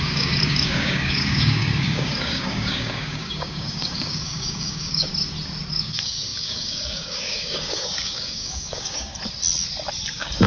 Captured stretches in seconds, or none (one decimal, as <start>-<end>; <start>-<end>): 5.1-5.7; 9.1-10.1